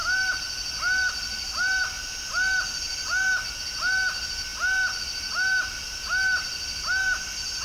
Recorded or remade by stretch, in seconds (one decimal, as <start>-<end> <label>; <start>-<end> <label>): 0.0-7.6 recorded

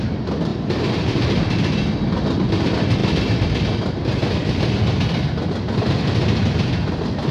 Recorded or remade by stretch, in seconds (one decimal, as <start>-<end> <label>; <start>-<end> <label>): 0.0-0.5 recorded; 0.5-1.4 remade; 1.4-3.0 recorded; 3.0-3.6 remade; 3.6-4.2 recorded; 4.2-5.9 remade; 5.9-7.3 recorded

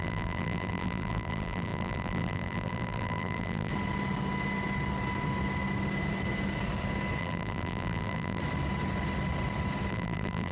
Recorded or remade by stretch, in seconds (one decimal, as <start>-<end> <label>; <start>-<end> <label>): 0.0-3.7 remade; 3.7-7.2 recorded; 7.2-8.4 remade; 8.4-9.9 recorded; 9.9-10.5 remade

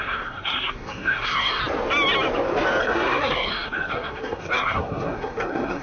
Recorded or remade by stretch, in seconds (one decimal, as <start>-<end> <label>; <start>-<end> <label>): 0.0-1.6 remade; 1.6-2.8 recorded; 2.8-5.8 remade

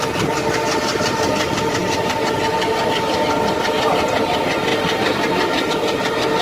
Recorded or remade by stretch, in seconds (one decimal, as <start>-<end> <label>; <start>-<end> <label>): 0.0-6.4 recorded